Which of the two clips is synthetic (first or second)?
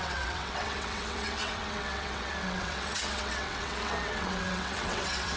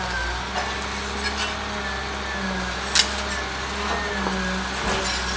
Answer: first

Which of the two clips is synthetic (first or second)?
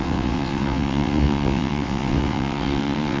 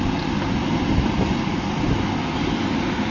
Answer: first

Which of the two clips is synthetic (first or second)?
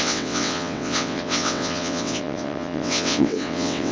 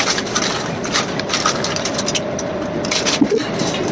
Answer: first